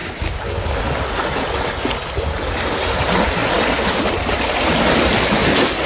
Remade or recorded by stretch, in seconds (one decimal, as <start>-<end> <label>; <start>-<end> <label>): 0.0-0.8 remade; 0.8-5.9 recorded